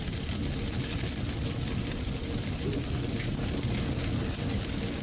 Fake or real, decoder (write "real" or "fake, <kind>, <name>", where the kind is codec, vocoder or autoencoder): real